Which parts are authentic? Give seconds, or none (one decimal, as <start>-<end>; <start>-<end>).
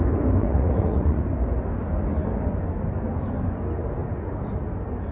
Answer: 0.0-0.4; 1.2-5.1